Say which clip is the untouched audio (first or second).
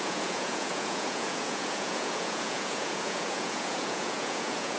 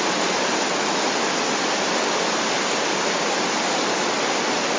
second